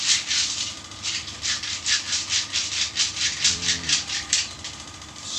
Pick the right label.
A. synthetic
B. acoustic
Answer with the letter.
A